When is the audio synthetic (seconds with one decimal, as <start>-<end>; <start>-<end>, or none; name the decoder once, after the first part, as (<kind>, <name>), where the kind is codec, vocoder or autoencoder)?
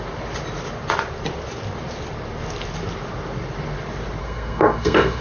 4.2-5.2 (codec, SNAC)